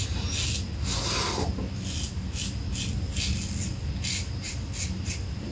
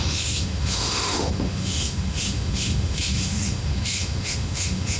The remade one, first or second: second